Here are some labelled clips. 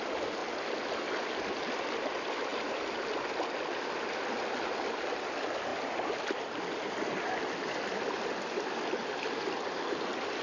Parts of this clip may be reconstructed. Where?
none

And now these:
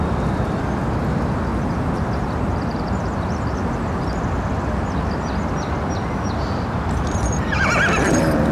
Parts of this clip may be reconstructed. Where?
1.5-2.5 (vocoder, BigVGAN v2)

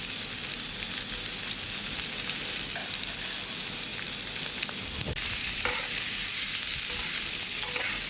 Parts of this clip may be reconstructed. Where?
none